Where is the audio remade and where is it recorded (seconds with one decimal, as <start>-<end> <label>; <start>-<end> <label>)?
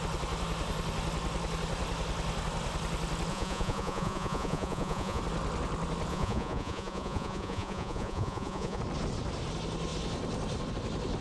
0.0-3.3 recorded; 3.3-5.2 remade; 5.2-6.1 recorded; 6.1-8.8 remade; 8.8-11.2 recorded